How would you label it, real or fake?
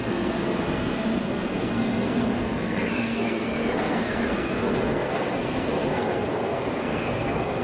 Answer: fake